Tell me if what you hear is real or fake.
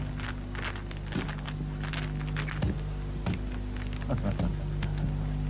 real